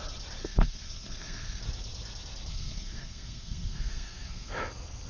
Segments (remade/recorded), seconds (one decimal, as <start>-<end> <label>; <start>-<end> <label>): 0.0-0.4 recorded; 0.4-1.6 remade; 1.6-2.5 recorded; 2.5-4.5 remade; 4.5-5.1 recorded